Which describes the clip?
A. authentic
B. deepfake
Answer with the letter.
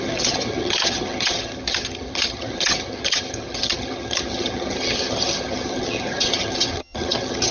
B